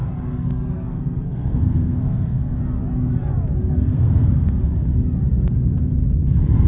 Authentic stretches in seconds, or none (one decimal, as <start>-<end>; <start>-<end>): 2.6-3.6; 4.6-6.7